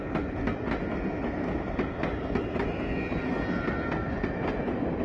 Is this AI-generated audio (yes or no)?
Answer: no